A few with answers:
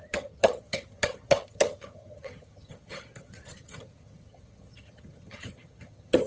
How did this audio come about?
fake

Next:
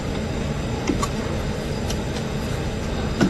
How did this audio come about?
real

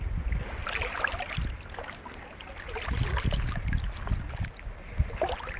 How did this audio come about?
real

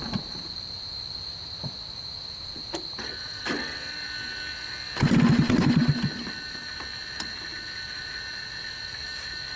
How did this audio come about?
real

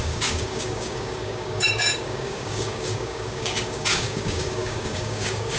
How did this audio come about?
fake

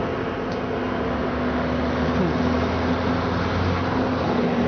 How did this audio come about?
real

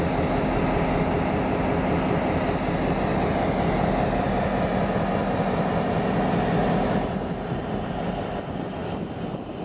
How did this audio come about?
real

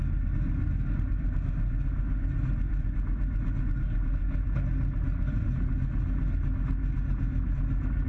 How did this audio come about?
real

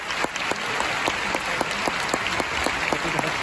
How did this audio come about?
real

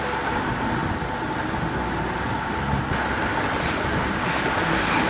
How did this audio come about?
real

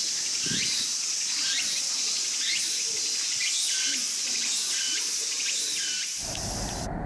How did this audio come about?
real